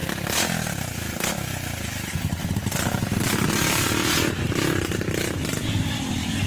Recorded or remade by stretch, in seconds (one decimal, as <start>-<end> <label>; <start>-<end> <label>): 0.0-2.3 recorded; 2.3-6.5 remade